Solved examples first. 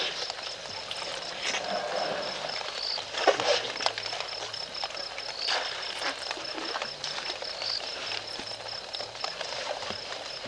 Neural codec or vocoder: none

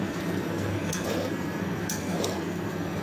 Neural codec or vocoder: codec, SNAC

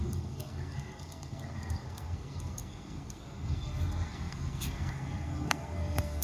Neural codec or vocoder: codec, SNAC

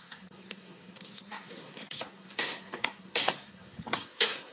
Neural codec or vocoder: codec, SNAC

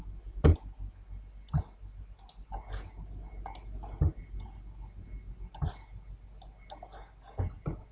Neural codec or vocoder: none